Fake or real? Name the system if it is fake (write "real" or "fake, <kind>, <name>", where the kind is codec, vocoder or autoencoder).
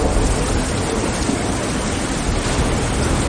real